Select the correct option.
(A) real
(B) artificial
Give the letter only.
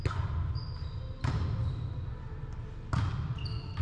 A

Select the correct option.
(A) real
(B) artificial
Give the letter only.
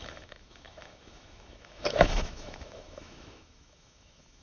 B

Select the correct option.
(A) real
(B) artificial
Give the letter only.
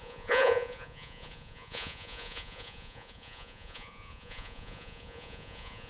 B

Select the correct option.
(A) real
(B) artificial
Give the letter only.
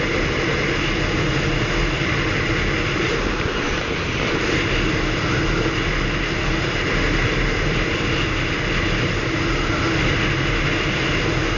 A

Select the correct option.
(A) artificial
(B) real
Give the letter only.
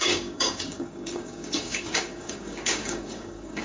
A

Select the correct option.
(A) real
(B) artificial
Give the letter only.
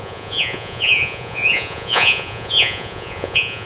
B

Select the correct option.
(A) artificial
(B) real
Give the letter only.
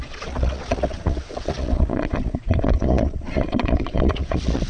A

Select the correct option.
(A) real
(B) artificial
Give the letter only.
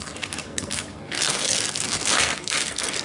B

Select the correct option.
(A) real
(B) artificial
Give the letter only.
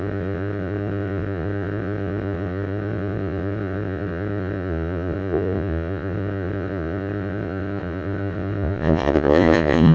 B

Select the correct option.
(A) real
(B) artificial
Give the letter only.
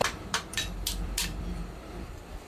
B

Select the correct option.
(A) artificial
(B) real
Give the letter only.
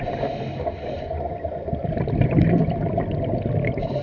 B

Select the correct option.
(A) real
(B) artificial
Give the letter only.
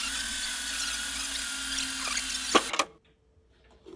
A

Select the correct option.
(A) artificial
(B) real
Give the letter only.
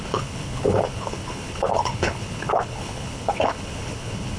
A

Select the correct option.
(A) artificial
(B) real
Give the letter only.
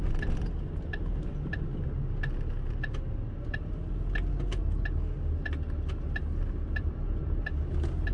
B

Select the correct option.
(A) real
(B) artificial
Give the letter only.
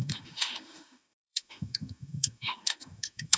B